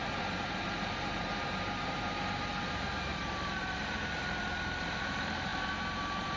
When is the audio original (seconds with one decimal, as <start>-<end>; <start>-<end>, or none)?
0.0-0.9